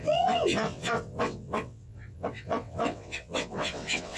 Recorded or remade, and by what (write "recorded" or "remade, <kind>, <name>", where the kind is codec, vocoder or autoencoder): remade, vocoder, WaveNeXt